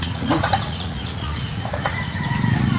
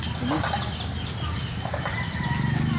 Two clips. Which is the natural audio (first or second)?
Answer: second